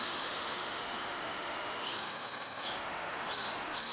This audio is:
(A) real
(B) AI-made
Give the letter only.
B